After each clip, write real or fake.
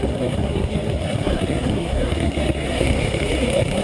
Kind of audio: fake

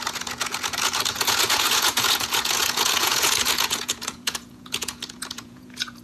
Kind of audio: fake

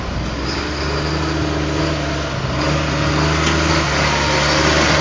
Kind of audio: real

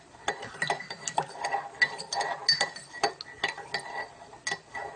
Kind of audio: real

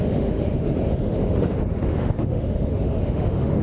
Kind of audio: fake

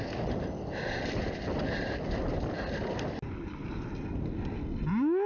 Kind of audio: real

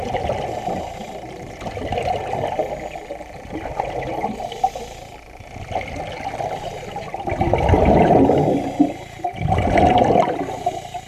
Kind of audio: real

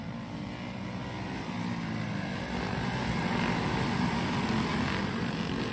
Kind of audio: real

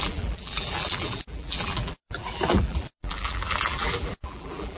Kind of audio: fake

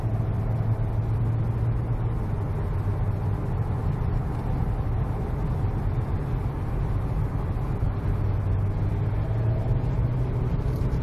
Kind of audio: real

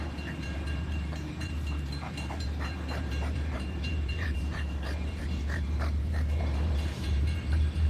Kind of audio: fake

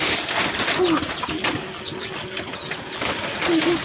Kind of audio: real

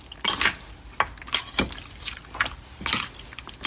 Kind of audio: real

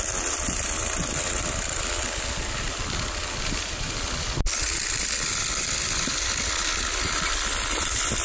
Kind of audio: real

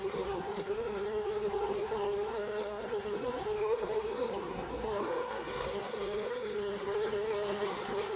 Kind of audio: fake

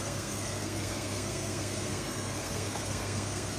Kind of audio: fake